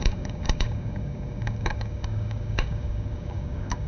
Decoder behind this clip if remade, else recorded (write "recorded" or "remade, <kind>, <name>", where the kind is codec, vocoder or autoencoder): remade, codec, DAC